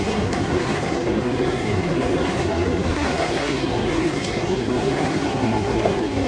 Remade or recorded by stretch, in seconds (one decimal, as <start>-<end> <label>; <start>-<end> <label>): 0.0-6.3 remade